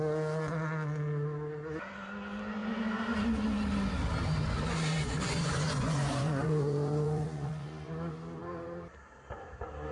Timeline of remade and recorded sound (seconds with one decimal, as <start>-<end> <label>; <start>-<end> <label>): 0.0-5.1 recorded; 5.1-7.9 remade; 7.9-9.9 recorded